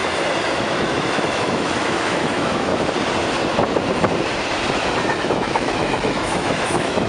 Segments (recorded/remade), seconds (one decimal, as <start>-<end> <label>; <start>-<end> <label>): 0.0-0.6 recorded; 0.6-2.7 remade; 2.7-5.2 recorded; 5.2-7.1 remade